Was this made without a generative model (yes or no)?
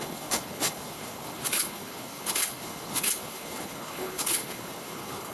no